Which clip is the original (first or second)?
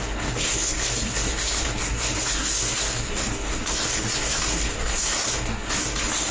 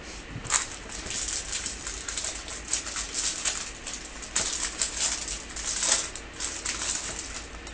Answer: second